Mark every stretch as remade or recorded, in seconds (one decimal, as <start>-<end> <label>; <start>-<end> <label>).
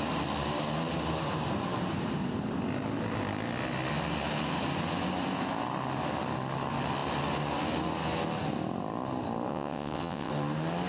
0.0-9.5 recorded; 9.5-10.3 remade; 10.3-10.9 recorded